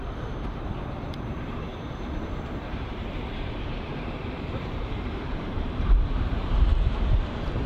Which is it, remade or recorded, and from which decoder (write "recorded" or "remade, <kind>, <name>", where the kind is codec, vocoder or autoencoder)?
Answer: remade, vocoder, BigVGAN v2